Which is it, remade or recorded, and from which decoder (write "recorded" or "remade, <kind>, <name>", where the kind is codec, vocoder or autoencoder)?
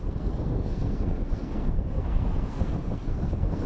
remade, codec, SNAC